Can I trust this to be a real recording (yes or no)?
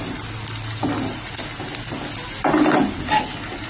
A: yes